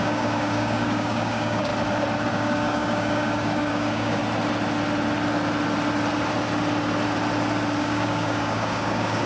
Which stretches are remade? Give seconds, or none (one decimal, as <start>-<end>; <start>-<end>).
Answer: 0.0-1.7; 2.3-4.2; 7.8-9.3

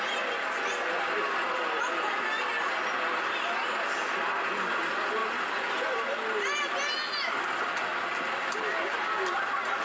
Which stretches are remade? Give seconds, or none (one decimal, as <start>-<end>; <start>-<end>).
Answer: none

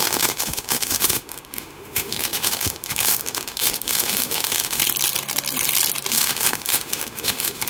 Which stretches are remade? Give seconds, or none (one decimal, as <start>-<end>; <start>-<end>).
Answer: 0.0-4.8; 6.1-7.7

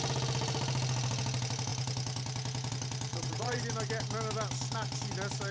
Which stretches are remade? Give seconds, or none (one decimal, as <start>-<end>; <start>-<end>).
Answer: 3.1-3.6

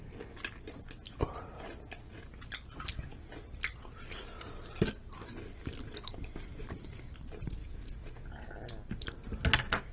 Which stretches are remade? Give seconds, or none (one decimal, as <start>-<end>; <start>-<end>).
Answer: 7.6-8.4

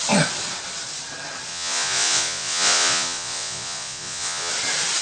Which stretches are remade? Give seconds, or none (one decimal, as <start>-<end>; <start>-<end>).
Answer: 1.5-4.5

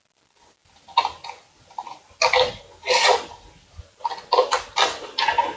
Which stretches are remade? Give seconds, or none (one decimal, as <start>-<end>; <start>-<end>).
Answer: none